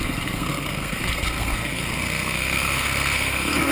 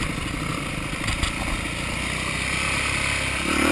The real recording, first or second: second